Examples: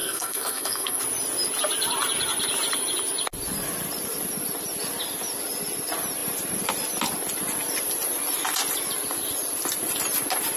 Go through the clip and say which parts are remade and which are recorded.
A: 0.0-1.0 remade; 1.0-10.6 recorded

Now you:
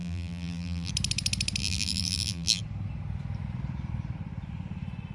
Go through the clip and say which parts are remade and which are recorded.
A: 0.0-0.9 remade; 0.9-1.6 recorded; 1.6-2.6 remade; 2.6-5.1 recorded

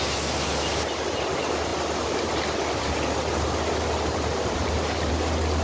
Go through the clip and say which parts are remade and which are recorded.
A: 0.0-5.6 recorded

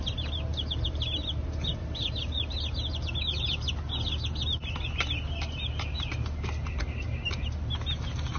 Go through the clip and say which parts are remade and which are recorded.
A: 0.0-8.4 recorded

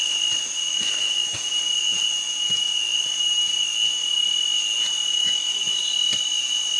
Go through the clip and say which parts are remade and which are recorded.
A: 0.0-0.7 recorded; 0.7-1.5 remade; 1.5-5.0 recorded; 5.0-5.6 remade; 5.6-6.8 recorded